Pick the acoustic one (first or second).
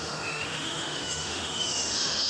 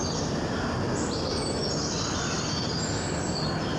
second